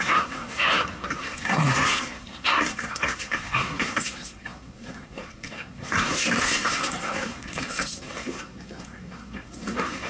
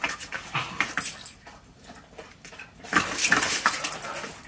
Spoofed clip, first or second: first